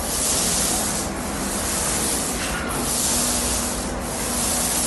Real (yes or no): yes